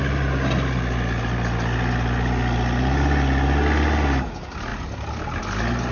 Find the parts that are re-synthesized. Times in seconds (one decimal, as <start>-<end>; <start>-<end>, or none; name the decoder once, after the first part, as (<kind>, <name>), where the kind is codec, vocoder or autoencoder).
none